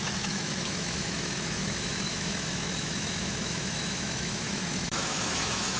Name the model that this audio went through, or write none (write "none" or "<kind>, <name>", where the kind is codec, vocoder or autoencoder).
autoencoder, DAC-VAE